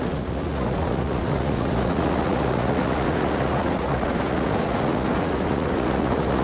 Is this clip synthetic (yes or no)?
yes